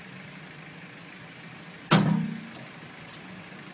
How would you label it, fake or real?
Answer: real